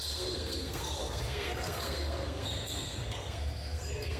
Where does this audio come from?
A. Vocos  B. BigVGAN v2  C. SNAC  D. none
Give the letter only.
C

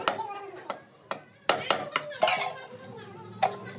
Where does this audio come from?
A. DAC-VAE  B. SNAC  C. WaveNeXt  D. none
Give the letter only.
D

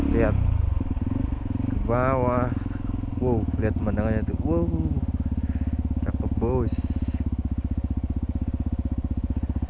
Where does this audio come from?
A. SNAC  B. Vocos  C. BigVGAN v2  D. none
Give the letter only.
D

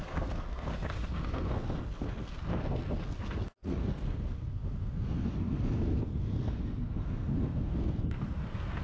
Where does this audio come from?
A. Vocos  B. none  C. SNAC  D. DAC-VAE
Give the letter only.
C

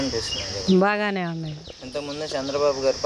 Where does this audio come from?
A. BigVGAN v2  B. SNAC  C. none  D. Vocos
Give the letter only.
C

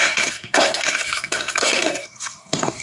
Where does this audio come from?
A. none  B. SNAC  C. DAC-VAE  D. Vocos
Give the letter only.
B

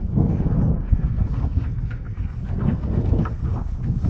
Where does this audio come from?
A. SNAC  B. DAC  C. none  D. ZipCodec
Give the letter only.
A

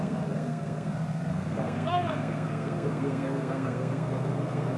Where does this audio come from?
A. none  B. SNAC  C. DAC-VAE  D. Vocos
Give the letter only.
B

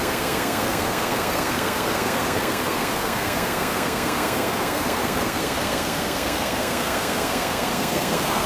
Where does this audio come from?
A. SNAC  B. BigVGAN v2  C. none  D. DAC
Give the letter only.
A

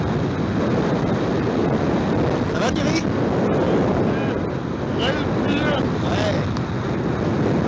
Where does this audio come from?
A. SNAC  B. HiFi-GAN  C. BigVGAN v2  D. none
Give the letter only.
D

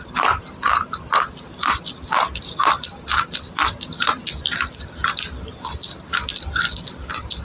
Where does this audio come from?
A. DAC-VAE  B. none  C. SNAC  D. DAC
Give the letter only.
B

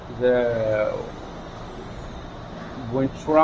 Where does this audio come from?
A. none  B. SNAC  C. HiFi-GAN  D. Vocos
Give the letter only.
A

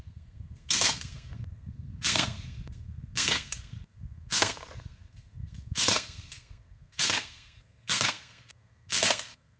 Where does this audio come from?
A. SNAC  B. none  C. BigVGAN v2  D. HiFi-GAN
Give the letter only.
A